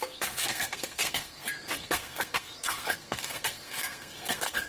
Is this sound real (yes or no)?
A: no